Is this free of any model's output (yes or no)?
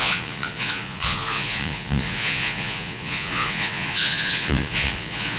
no